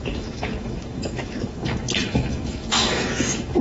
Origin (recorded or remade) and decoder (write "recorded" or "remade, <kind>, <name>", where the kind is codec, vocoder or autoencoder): remade, autoencoder, DAC-VAE